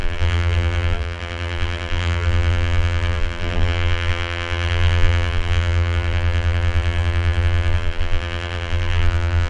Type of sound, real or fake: fake